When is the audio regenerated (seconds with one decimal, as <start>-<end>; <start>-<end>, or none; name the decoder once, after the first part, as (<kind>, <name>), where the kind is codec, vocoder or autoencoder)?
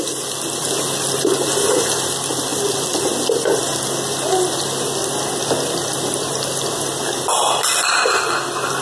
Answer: none